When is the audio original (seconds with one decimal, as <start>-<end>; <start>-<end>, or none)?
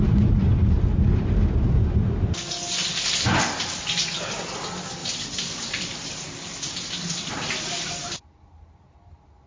0.0-5.0; 8.6-9.5